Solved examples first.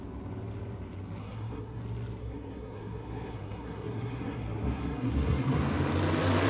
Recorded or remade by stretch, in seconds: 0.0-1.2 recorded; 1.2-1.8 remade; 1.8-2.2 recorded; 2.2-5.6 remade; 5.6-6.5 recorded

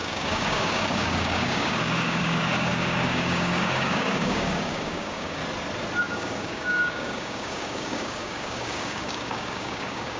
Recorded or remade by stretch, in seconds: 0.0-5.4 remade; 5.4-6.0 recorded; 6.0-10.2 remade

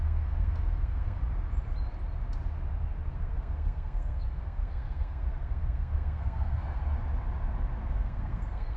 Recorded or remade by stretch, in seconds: 0.0-1.2 remade; 1.2-3.1 recorded; 3.1-6.8 remade; 6.8-7.9 recorded; 7.9-8.8 remade

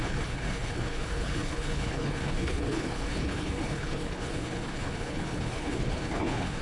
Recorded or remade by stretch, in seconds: 0.0-6.6 remade

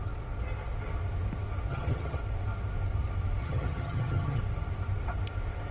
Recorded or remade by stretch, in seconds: 0.0-1.7 recorded; 1.7-2.2 remade; 2.2-3.4 recorded; 3.4-4.4 remade; 4.4-5.7 recorded

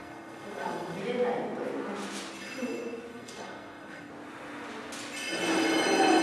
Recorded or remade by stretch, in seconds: 0.0-1.0 remade; 1.0-3.1 recorded; 3.1-4.1 remade; 4.1-6.2 recorded

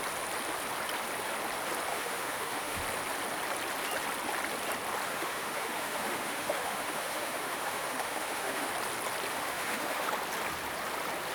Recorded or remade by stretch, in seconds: 0.0-1.9 recorded; 1.9-2.8 remade; 2.8-5.1 recorded; 5.1-8.7 remade; 8.7-9.3 recorded; 9.3-10.1 remade; 10.1-11.3 recorded